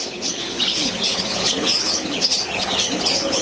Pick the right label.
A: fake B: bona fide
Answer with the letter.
A